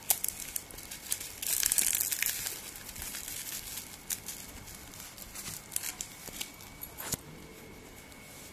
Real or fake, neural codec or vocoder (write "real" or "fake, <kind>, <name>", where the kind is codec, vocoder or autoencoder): real